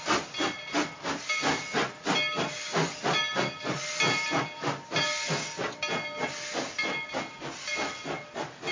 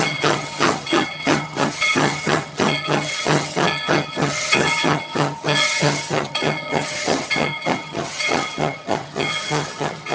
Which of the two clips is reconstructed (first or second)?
second